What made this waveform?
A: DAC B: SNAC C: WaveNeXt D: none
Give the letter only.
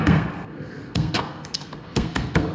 B